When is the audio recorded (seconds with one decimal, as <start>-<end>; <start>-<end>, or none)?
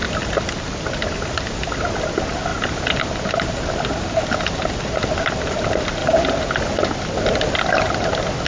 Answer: 0.0-8.5